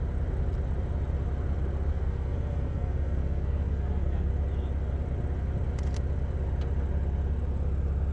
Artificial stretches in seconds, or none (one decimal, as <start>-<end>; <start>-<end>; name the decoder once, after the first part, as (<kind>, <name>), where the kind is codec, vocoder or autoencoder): 1.9-4.3 (codec, SNAC)